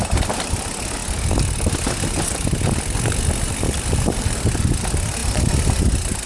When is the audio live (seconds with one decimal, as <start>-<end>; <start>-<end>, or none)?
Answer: 0.0-6.3